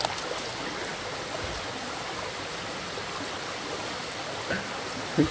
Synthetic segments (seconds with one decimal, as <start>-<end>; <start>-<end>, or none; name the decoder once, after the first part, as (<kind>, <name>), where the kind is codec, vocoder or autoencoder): none